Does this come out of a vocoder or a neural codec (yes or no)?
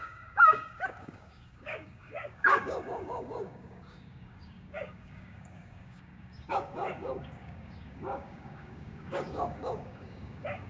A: yes